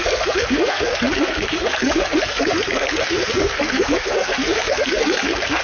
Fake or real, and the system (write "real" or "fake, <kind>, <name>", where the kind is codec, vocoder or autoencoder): fake, codec, SNAC